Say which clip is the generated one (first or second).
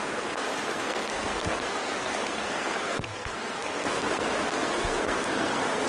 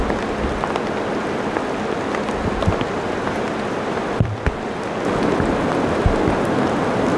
first